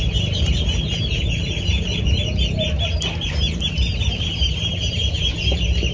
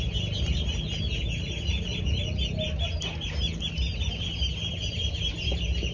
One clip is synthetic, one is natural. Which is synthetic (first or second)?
first